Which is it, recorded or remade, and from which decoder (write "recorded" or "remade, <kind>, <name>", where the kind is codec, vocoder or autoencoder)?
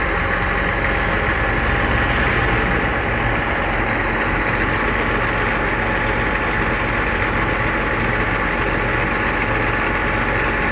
recorded